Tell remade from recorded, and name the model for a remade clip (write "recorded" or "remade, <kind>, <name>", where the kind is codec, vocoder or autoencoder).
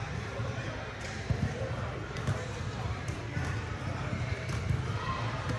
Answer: remade, vocoder, BigVGAN v2